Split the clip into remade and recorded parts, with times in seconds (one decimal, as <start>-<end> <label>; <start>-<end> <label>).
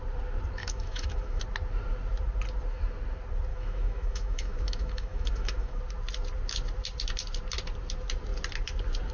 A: 0.0-0.6 recorded; 0.6-1.4 remade; 1.4-3.5 recorded; 3.5-5.8 remade; 5.8-9.1 recorded